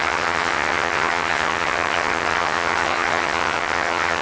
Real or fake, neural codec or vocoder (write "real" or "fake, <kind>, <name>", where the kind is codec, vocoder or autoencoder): fake, vocoder, HiFi-GAN